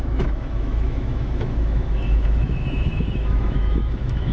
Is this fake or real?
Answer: fake